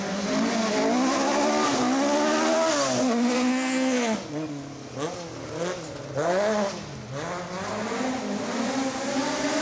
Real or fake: real